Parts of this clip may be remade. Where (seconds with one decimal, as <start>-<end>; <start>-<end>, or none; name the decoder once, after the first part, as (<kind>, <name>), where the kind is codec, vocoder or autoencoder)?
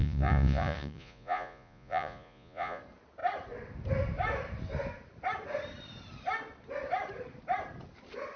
0.0-2.8 (vocoder, Vocos)